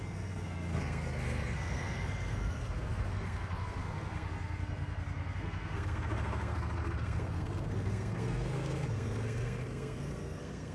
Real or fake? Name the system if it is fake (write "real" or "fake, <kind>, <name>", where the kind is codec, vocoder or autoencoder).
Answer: fake, codec, SNAC